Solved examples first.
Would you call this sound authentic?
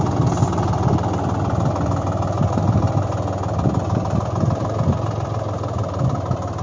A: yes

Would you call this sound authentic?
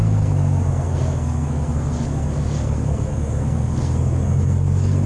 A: no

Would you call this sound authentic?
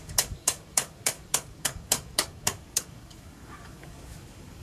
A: no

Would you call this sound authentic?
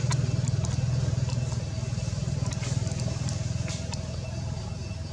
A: yes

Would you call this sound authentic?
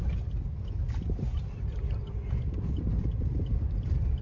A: yes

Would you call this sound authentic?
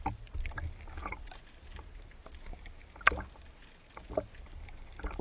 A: yes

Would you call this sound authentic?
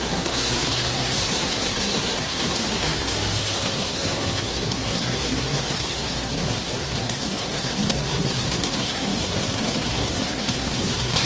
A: no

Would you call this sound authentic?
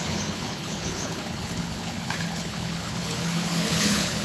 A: no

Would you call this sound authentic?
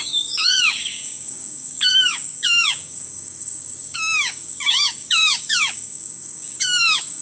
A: no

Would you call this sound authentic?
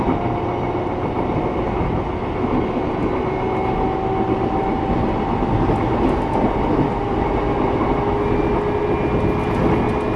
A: yes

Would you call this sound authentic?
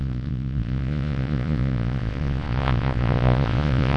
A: no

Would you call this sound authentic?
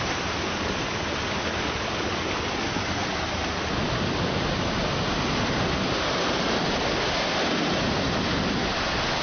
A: yes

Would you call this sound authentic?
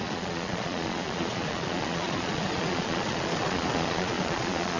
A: no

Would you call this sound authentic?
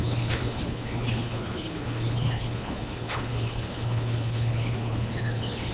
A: no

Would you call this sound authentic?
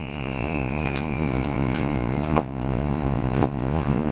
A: no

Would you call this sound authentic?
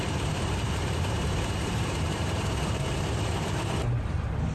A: no